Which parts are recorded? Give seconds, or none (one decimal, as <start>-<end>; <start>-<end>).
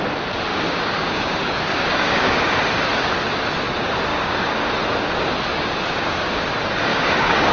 0.0-0.5; 2.5-4.1; 4.7-5.5; 6.4-6.9